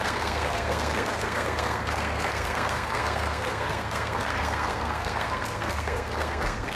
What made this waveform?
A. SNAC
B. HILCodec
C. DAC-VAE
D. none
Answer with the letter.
A